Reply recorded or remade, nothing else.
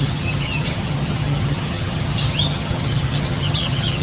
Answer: remade